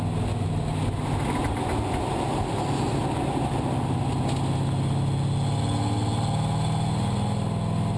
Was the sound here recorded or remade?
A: recorded